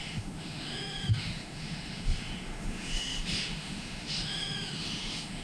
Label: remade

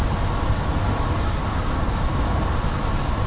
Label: recorded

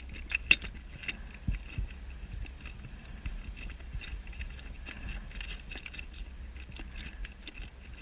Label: recorded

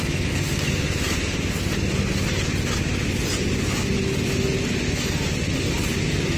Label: recorded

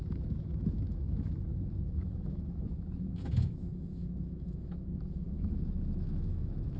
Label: remade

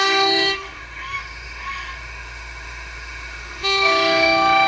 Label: remade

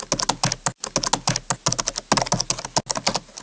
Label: recorded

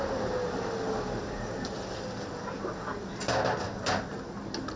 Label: recorded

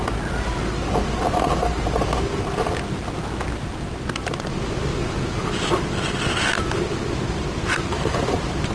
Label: recorded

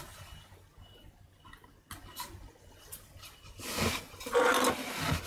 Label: recorded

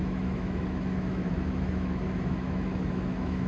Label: remade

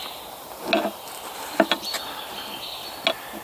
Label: recorded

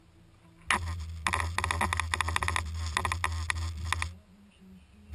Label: recorded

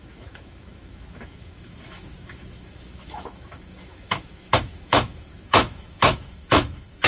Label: remade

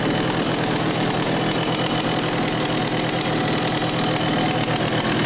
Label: recorded